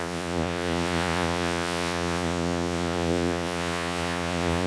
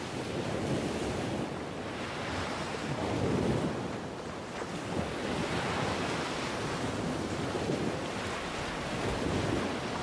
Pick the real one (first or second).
second